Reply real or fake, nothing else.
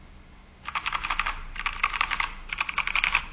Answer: real